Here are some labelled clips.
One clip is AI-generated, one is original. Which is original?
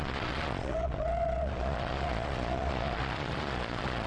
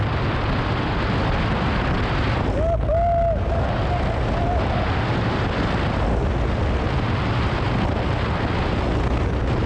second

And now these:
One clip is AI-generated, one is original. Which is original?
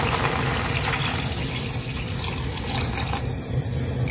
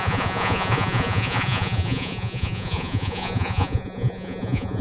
first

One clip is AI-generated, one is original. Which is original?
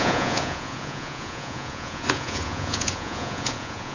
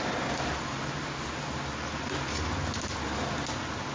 second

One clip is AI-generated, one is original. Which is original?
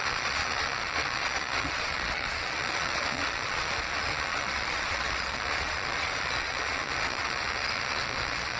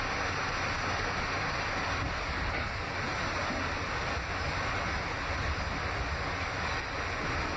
second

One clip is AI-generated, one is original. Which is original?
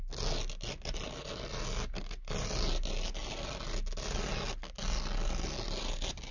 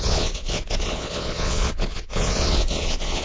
first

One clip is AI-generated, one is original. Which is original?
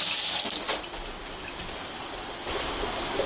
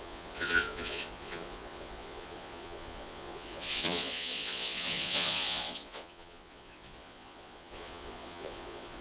first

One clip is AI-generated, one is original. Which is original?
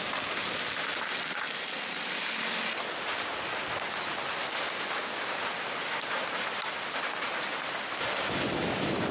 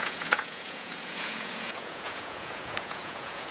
first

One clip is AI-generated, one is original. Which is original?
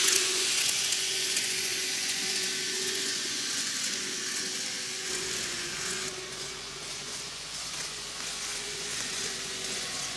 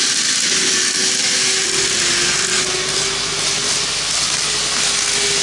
second